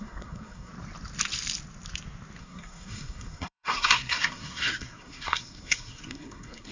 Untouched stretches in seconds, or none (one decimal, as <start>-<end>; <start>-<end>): 0.7-2.4